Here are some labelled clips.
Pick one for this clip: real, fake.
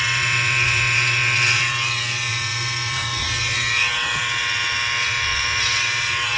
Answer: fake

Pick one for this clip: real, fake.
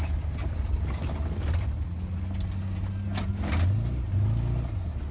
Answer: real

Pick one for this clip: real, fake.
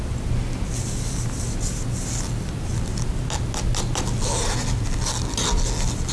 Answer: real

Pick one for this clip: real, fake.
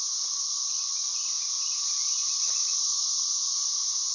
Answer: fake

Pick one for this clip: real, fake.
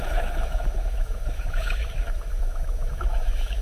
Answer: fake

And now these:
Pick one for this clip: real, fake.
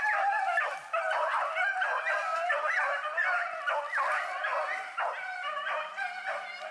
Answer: real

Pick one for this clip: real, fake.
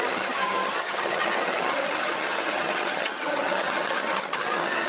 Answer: fake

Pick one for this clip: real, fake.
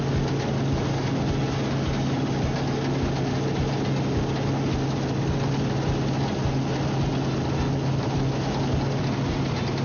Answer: real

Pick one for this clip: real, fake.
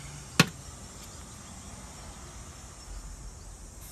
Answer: real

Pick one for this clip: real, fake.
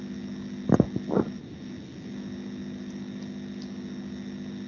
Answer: real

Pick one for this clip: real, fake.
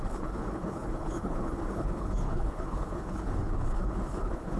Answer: fake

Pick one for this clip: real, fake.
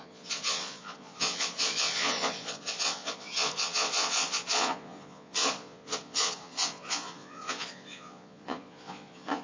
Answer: fake